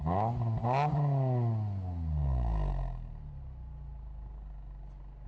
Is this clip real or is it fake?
real